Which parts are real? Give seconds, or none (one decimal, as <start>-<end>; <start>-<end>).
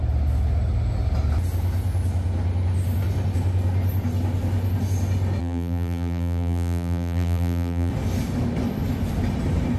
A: 0.0-5.4; 7.9-9.8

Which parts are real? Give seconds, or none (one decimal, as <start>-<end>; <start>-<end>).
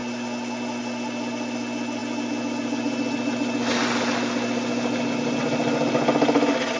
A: 0.0-6.8